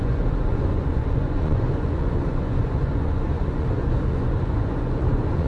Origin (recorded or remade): remade